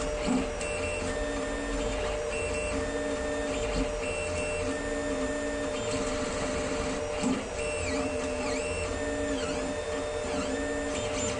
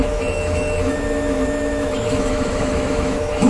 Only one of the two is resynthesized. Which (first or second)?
second